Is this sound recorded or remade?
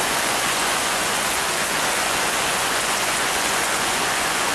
remade